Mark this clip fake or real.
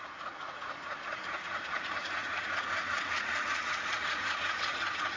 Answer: fake